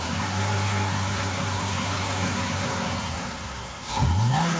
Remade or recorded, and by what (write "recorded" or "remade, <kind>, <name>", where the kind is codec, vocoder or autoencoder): remade, codec, SNAC